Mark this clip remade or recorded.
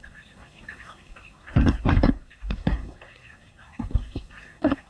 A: remade